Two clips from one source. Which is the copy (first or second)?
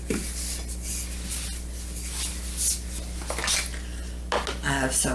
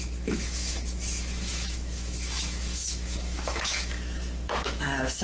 second